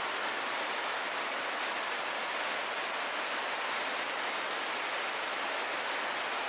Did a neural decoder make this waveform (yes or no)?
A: no